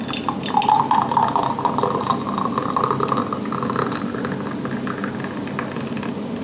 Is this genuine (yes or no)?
yes